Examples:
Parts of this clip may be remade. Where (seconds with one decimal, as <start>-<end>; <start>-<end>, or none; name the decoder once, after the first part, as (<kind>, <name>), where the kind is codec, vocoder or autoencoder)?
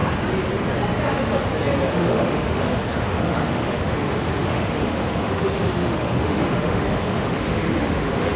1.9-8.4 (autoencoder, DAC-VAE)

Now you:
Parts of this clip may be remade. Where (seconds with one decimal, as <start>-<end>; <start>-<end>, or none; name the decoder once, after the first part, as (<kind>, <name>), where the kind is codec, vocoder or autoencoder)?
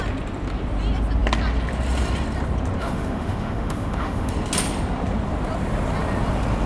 2.8-4.3 (autoencoder, DAC-VAE)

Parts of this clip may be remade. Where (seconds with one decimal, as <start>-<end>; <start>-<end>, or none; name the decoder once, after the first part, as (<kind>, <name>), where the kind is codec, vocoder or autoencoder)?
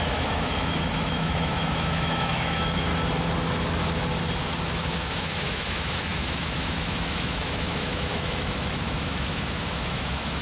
0.0-2.9 (autoencoder, DAC-VAE); 4.7-10.4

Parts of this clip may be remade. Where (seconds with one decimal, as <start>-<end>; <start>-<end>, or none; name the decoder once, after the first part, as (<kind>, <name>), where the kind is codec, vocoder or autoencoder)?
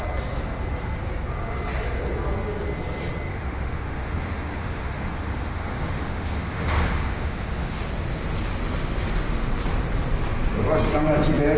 3.3-7.8 (autoencoder, DAC-VAE)